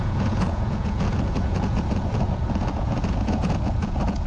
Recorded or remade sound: remade